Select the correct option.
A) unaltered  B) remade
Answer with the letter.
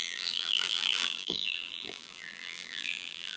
B